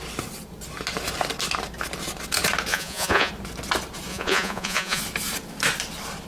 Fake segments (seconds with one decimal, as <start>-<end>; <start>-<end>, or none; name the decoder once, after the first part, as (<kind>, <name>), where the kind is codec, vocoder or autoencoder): 2.7-3.3 (vocoder, Vocos); 4.1-5.0